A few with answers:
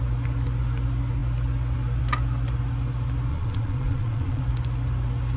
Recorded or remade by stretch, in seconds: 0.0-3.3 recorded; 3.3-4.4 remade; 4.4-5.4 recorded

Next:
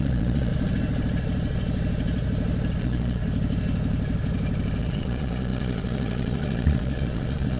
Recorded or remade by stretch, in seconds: 0.0-0.5 remade; 0.5-2.8 recorded; 2.8-3.2 remade; 3.2-4.8 recorded; 4.8-7.6 remade